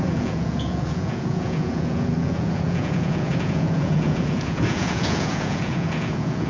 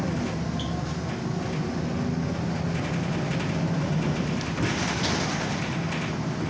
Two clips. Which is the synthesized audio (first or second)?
first